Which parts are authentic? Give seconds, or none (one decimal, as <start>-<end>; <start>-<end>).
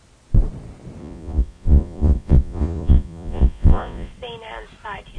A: 0.0-1.0; 4.1-5.2